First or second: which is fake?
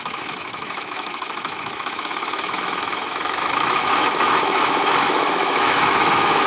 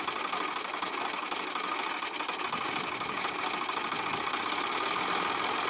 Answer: first